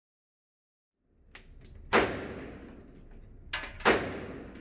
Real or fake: real